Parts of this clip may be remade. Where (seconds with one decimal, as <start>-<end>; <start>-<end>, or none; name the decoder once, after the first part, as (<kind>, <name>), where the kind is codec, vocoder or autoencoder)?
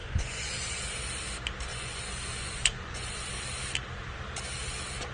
0.0-0.8 (vocoder, Vocos); 1.7-3.2